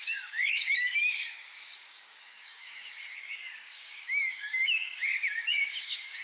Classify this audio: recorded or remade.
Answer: remade